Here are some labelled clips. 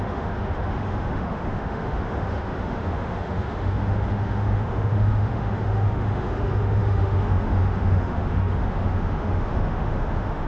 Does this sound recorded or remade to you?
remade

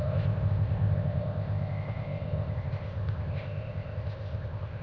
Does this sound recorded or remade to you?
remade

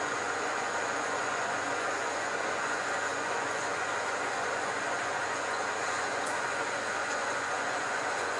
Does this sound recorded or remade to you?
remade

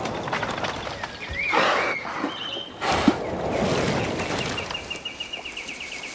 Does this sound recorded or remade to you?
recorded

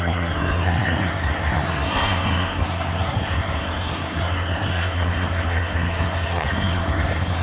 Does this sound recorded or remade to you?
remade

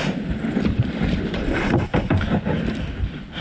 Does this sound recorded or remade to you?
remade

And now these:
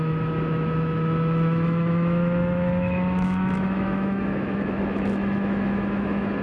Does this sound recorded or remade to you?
remade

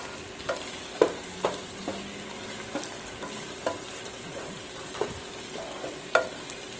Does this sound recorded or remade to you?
recorded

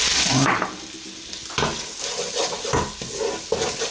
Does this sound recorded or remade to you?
recorded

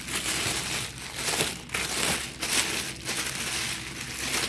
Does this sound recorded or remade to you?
recorded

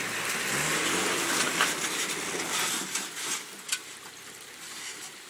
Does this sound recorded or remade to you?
recorded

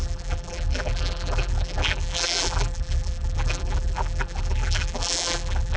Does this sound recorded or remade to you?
remade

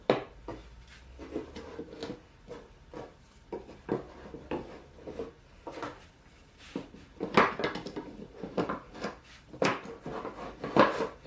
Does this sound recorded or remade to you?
recorded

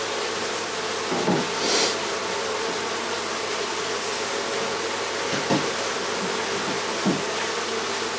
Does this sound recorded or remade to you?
recorded